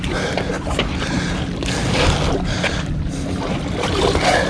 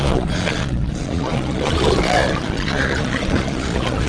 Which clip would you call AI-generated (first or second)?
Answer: second